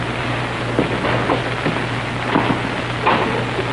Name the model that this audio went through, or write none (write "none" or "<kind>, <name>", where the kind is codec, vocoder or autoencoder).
none